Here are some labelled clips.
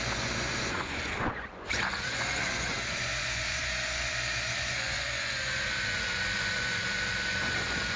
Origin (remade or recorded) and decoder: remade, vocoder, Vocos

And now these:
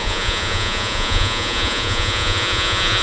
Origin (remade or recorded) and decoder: remade, vocoder, Vocos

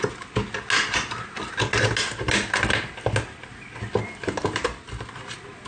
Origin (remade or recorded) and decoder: recorded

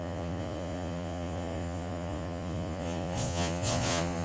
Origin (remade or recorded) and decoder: remade, vocoder, Vocos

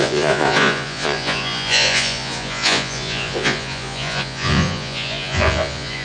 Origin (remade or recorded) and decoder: remade, vocoder, Vocos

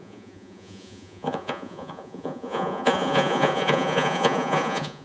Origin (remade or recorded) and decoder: remade, vocoder, Vocos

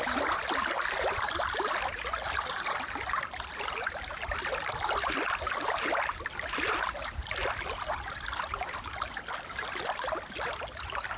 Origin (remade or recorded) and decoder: recorded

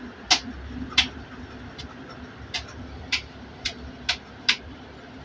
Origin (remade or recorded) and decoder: recorded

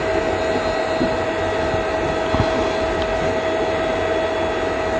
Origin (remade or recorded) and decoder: recorded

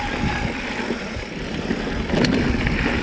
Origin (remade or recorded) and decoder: recorded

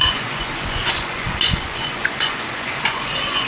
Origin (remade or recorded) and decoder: remade, vocoder, Vocos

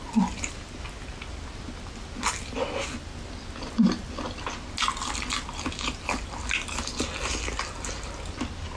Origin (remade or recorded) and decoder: recorded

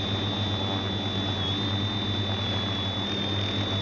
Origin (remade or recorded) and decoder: recorded